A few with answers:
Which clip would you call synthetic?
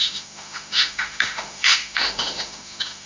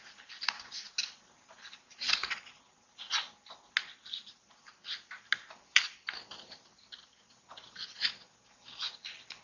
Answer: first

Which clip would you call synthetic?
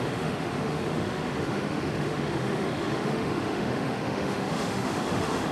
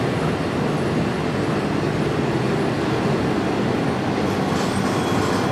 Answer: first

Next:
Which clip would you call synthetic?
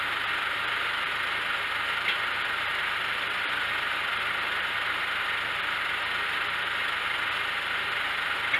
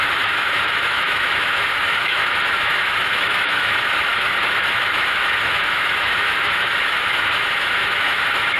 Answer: second